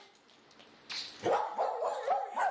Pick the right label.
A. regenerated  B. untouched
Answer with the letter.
B